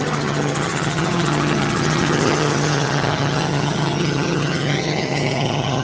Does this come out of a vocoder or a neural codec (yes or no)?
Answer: yes